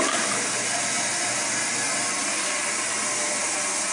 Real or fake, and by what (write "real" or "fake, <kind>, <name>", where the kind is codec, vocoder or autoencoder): real